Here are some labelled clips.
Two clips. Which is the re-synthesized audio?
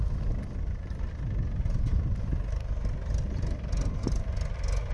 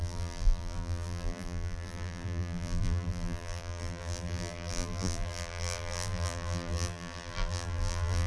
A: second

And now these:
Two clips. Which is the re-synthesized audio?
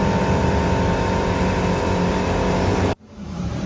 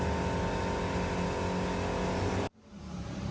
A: first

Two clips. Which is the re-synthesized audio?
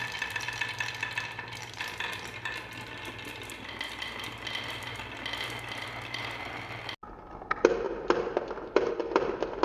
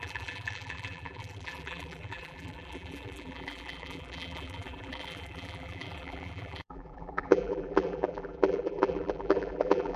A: second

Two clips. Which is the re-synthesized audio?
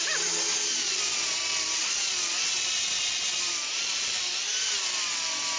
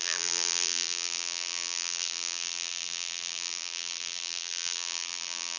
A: second